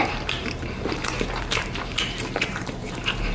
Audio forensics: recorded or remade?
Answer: remade